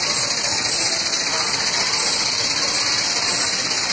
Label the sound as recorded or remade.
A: recorded